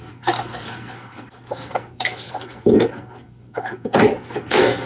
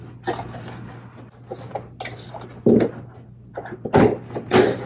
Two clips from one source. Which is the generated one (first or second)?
first